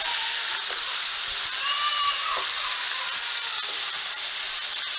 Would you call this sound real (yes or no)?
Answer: yes